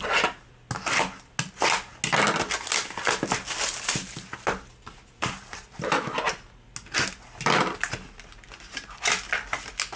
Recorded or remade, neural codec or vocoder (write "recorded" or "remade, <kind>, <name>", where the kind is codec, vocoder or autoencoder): recorded